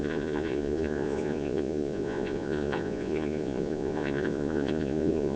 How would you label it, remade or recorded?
remade